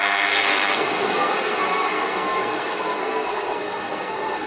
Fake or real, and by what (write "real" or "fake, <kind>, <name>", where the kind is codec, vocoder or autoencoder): fake, codec, SNAC